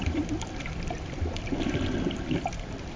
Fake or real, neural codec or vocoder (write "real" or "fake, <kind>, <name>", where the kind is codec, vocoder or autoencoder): real